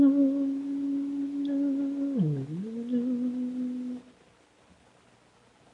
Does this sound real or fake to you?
real